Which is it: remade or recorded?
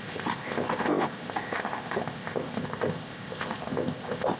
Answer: remade